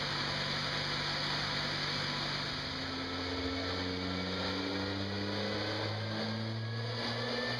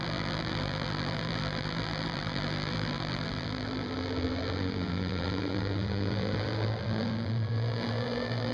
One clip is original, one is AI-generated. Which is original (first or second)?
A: first